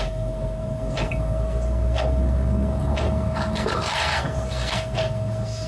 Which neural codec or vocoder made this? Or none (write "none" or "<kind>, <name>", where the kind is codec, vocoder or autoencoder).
codec, SNAC